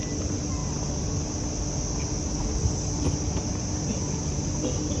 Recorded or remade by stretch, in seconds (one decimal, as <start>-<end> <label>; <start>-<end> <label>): 0.0-5.0 recorded

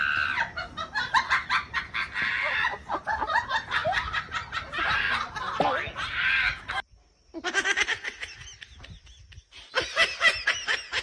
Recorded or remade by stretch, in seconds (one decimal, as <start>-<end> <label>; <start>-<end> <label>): 0.0-11.0 recorded

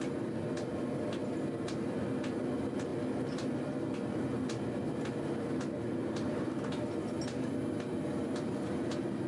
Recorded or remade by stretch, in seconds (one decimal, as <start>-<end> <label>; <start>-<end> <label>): 0.0-9.3 recorded

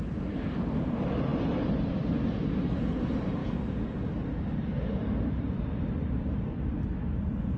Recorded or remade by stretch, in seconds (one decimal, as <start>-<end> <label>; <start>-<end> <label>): 0.0-7.6 recorded